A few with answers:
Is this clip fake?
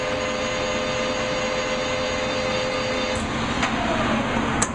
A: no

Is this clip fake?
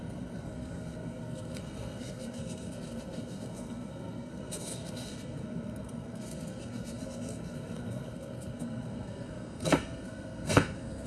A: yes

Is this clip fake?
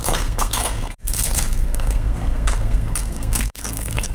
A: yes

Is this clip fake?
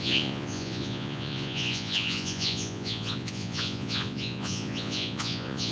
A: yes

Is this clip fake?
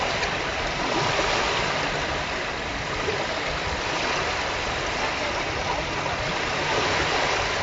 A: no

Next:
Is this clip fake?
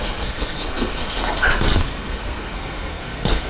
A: yes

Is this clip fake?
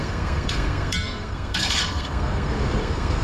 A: yes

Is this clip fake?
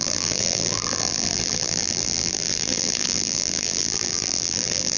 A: yes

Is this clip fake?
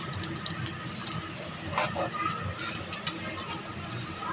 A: no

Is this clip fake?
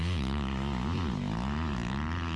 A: no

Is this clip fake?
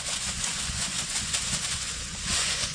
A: yes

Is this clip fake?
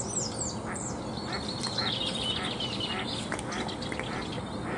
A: no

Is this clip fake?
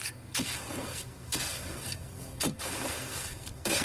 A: yes